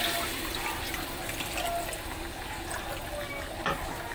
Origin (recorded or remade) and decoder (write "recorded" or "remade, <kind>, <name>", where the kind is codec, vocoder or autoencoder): recorded